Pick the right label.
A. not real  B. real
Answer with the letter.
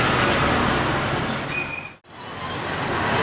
B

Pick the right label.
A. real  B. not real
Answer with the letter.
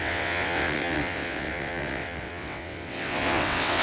B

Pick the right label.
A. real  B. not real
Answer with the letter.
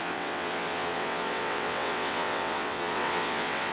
B